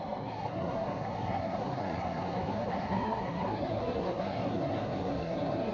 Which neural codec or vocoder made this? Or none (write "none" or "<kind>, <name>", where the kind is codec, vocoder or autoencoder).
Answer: codec, SNAC